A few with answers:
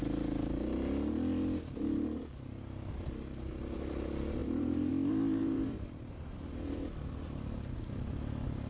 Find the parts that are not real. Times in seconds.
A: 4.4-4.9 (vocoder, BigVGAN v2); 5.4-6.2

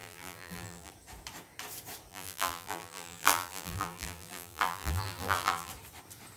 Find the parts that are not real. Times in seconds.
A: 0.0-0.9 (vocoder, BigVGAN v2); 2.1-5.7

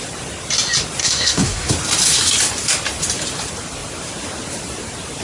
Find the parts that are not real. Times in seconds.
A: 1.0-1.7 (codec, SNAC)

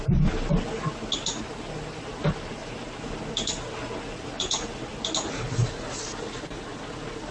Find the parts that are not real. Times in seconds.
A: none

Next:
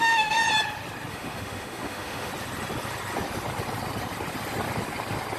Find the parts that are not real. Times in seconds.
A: 0.0-0.4 (autoencoder, DAC-VAE); 1.1-2.3